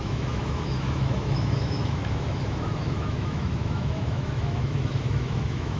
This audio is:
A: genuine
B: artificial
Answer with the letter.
B